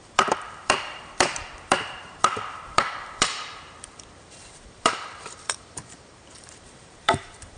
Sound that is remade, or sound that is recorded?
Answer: remade